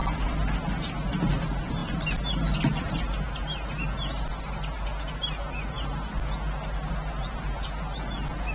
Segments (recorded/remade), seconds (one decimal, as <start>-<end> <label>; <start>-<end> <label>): 0.0-8.5 recorded